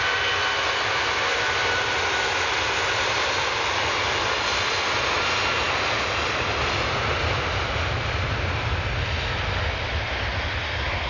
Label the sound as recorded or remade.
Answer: recorded